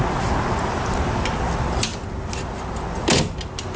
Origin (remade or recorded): recorded